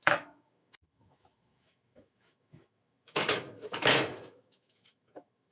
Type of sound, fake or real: fake